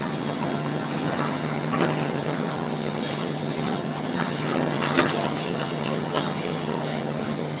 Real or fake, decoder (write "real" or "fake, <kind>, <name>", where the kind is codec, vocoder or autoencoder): fake, vocoder, HiFi-GAN